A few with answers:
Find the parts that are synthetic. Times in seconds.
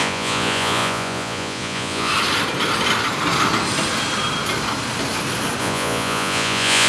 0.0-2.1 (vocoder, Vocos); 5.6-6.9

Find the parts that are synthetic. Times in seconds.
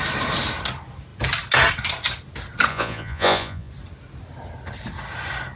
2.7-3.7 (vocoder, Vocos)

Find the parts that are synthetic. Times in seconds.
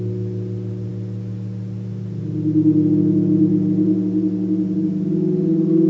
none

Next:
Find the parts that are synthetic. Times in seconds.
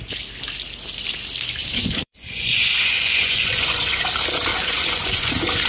1.6-4.0 (vocoder, Vocos); 4.5-5.3